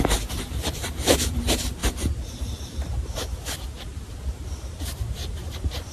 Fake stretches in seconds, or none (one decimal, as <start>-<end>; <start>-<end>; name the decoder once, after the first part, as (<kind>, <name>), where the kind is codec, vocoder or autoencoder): 0.0-5.9 (vocoder, BigVGAN v2)